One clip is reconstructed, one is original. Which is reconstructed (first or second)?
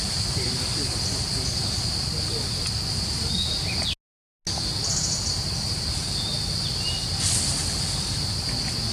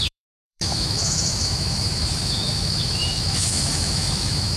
second